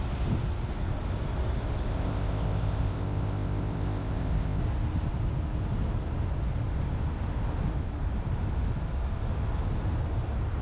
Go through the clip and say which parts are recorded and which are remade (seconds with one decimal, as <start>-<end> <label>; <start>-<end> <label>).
0.0-1.9 recorded; 1.9-4.6 remade; 4.6-10.6 recorded